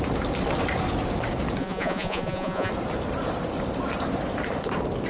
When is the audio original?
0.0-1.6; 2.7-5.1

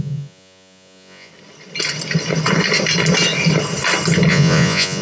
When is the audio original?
1.3-4.3

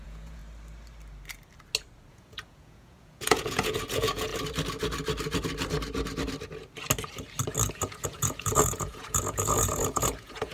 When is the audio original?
0.4-2.1; 4.3-7.7

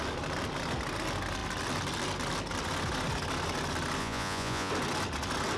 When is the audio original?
0.0-4.0; 4.7-5.6

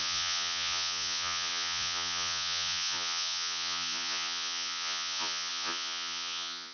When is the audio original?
none

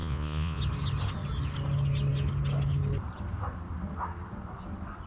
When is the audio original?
0.6-5.1